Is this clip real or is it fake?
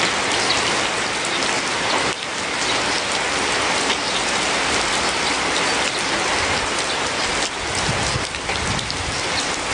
real